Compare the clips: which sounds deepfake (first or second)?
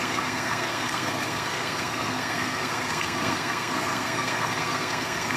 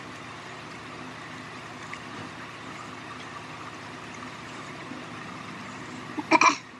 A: first